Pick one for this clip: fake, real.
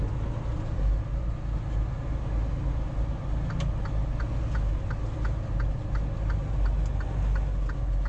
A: real